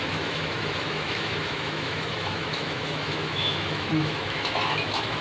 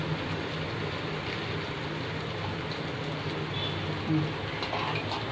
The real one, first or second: second